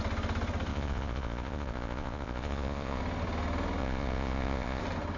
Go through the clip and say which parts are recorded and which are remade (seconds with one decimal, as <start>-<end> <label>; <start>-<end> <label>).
0.0-0.7 recorded; 0.7-3.0 remade; 3.0-3.8 recorded; 3.8-4.8 remade; 4.8-5.2 recorded